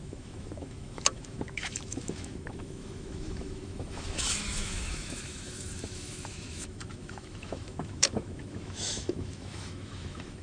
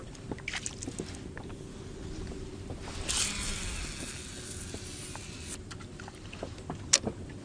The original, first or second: second